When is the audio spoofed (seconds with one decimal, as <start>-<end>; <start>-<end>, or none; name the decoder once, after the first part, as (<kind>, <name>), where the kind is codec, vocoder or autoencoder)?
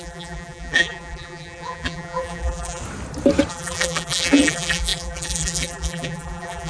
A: 0.0-2.8 (vocoder, BigVGAN v2); 3.5-6.7